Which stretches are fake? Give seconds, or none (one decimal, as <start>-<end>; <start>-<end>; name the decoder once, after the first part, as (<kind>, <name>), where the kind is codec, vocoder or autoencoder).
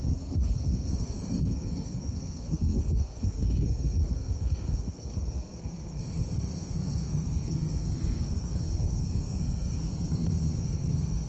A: 0.0-11.3 (codec, SNAC)